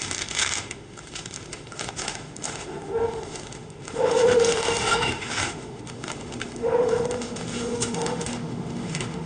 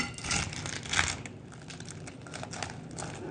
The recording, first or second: second